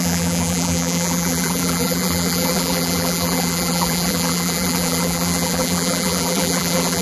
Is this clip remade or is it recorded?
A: remade